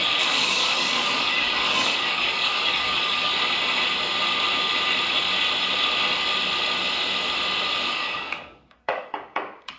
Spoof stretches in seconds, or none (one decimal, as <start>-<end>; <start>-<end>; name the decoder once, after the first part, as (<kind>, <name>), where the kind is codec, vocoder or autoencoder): 0.0-3.3 (codec, DAC); 7.9-9.8